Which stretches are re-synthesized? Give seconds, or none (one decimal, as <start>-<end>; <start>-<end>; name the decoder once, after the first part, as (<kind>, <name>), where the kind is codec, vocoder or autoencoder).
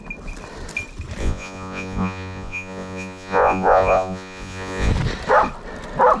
1.2-4.9 (vocoder, Vocos)